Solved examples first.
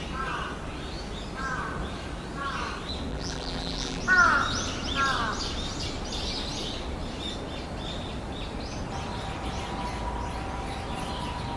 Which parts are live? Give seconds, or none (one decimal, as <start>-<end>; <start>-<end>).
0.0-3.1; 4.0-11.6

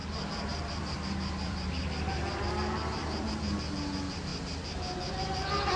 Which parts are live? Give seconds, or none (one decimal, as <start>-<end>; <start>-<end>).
3.3-5.8

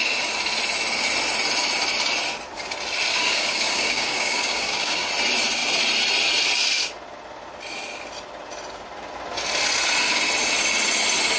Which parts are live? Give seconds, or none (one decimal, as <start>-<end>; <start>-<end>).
0.0-3.1; 5.1-11.4